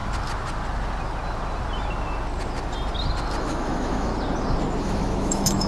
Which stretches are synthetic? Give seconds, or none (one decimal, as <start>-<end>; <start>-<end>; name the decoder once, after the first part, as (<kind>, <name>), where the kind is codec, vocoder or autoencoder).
3.4-4.1 (autoencoder, DAC-VAE); 4.8-5.7